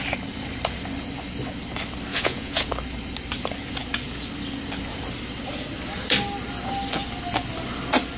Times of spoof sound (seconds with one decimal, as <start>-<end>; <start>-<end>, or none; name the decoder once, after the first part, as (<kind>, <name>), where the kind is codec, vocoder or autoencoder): 2.1-2.7 (vocoder, Vocos)